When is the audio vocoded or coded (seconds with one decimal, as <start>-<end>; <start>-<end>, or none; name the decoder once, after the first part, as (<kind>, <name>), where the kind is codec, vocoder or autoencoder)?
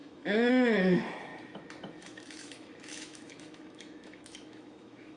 0.0-1.3 (autoencoder, DAC-VAE); 1.9-5.2